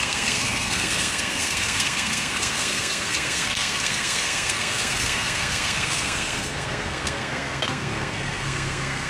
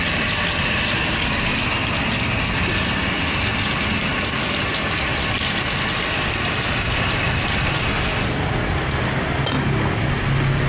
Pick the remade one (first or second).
first